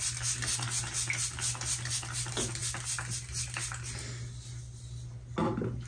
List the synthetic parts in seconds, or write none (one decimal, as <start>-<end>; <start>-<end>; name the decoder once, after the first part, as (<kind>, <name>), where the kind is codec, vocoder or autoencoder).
none